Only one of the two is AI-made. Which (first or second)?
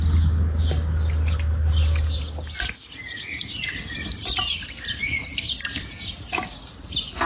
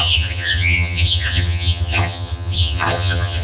second